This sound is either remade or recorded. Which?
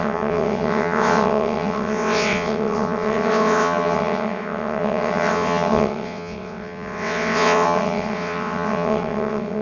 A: remade